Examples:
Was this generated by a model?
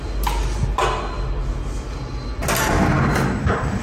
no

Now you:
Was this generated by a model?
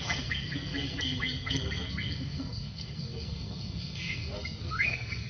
yes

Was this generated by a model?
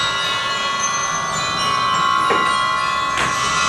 no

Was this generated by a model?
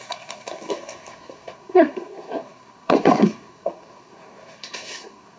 yes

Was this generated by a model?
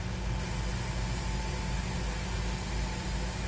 no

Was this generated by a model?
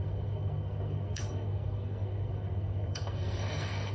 yes